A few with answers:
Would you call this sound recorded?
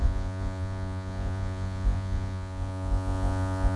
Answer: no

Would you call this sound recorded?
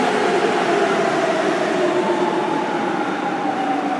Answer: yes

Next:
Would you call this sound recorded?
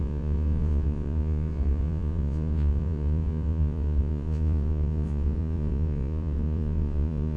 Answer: no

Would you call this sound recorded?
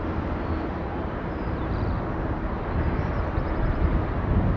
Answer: yes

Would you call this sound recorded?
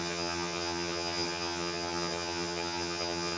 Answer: no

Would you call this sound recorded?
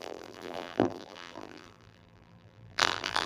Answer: no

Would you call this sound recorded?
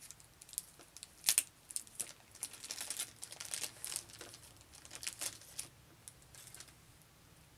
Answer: yes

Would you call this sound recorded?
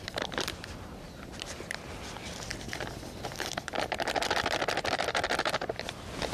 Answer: no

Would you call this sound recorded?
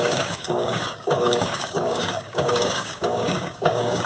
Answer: no